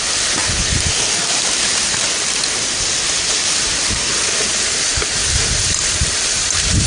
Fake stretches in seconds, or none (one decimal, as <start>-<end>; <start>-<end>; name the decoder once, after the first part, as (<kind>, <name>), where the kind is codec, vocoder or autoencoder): none